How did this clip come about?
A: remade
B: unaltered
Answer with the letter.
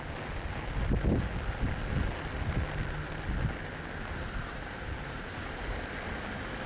B